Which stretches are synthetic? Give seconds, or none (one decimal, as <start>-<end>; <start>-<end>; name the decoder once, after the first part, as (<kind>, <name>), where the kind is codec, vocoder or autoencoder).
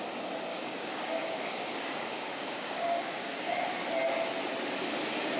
0.5-3.7 (codec, DAC)